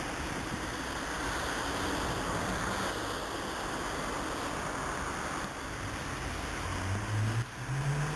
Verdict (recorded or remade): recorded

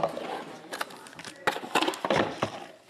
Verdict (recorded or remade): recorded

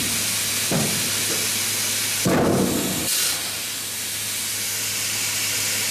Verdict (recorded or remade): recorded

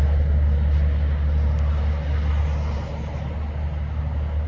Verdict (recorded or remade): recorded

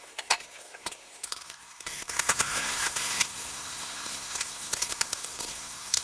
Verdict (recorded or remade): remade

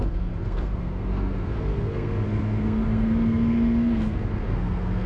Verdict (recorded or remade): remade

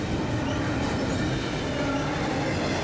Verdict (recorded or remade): recorded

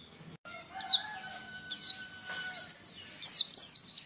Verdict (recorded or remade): recorded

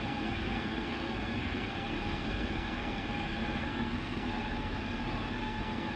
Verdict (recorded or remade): remade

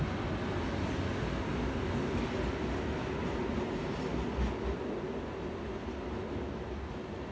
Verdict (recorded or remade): recorded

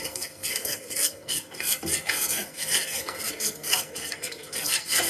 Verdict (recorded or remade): remade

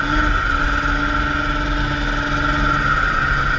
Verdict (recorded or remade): recorded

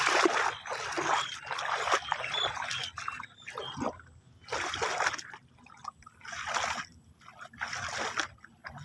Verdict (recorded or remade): recorded